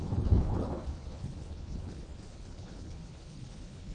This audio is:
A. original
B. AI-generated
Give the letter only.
B